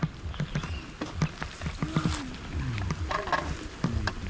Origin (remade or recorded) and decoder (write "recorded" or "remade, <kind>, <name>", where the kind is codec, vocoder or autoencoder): recorded